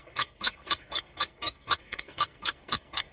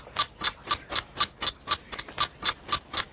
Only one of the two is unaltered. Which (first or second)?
second